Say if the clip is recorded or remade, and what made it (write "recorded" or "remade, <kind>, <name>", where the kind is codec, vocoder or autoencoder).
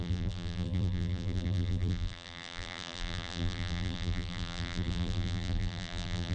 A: remade, vocoder, BigVGAN v2